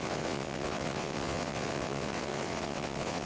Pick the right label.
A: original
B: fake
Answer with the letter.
B